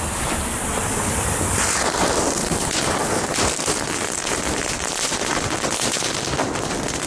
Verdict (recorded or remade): remade